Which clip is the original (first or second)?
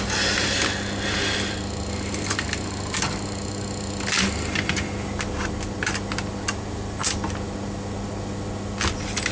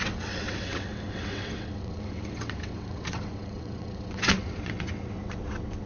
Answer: first